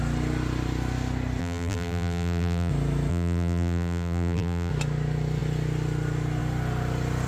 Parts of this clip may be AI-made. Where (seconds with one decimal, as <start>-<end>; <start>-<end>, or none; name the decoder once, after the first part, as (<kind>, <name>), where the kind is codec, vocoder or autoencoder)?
1.4-2.7 (vocoder, BigVGAN v2); 3.1-4.7